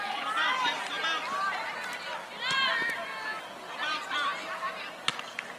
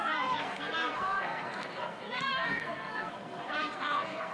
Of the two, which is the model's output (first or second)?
second